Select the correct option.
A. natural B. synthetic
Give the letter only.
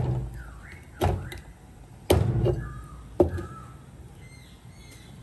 A